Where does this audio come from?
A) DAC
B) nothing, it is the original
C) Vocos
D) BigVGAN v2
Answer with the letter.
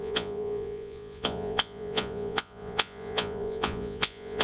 C